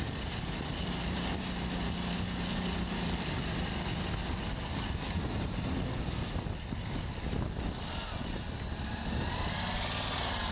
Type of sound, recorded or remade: recorded